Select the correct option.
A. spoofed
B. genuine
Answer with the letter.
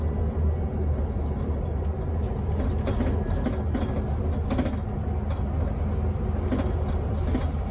B